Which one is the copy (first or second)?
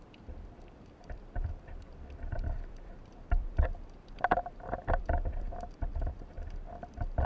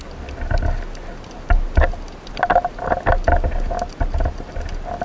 first